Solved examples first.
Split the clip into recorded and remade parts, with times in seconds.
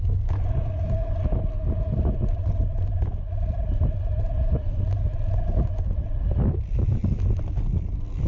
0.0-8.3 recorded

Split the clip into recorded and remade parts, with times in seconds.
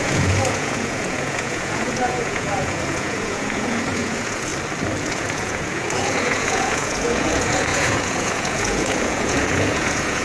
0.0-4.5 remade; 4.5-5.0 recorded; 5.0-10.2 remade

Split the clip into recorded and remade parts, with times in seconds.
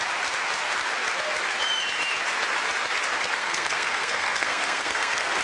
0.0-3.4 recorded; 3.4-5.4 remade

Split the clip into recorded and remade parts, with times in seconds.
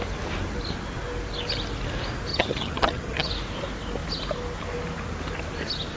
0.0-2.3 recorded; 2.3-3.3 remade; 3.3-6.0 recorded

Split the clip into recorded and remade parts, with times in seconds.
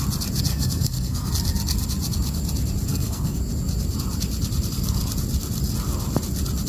0.0-0.5 recorded; 0.5-1.3 remade; 1.3-2.9 recorded; 2.9-3.4 remade; 3.4-6.7 recorded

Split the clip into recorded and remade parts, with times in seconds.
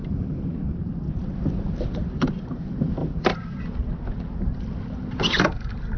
0.0-6.0 recorded